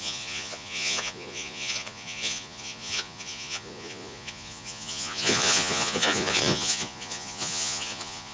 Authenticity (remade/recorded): remade